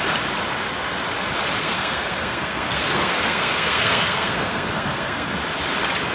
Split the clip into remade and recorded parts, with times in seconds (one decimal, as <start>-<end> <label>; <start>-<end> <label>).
0.0-1.6 recorded; 1.6-5.3 remade; 5.3-6.1 recorded